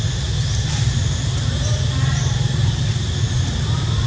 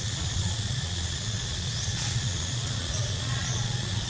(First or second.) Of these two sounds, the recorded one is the first